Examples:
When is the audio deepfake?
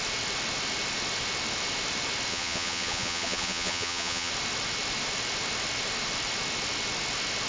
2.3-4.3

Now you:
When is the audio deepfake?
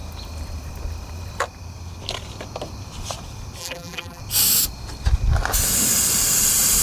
3.6-4.2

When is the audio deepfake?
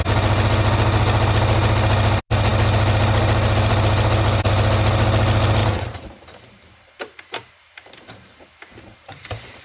5.6-9.6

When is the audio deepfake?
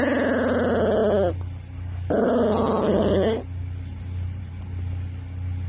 none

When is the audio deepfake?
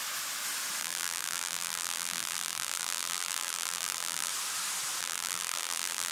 0.8-4.3; 5.0-6.1